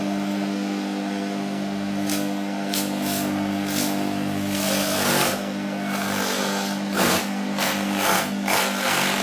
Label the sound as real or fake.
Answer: fake